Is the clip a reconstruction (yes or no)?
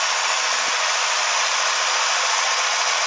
no